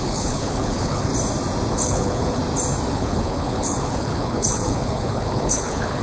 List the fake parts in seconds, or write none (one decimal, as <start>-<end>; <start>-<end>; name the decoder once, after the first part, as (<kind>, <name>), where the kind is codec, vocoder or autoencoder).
0.0-1.1 (codec, HILCodec); 1.7-2.4; 2.9-6.0